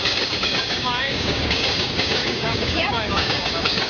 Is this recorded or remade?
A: remade